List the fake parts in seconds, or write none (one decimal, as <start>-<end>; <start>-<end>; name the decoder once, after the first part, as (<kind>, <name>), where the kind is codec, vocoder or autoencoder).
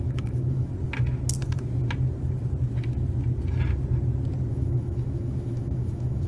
0.0-0.7 (autoencoder, DAC-VAE); 4.5-6.3